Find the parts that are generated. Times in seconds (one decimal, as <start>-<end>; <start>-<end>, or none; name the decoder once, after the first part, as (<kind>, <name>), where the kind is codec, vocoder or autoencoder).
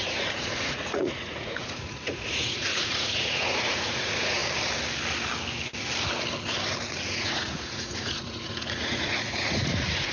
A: 0.0-4.4 (vocoder, Vocos); 6.9-10.1